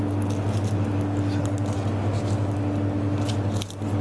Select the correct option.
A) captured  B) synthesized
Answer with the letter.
A